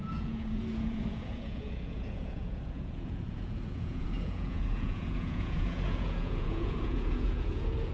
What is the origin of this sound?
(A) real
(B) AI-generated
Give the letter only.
B